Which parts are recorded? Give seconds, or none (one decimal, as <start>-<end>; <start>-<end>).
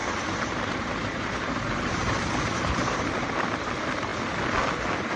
3.1-5.2